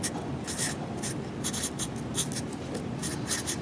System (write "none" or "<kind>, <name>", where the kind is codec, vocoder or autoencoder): none